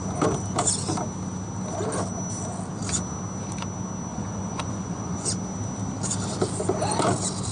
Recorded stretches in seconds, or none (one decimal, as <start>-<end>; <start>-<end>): 0.0-4.1; 5.3-7.5